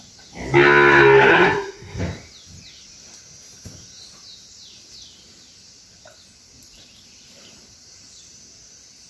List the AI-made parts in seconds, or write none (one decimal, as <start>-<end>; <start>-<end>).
1.3-2.0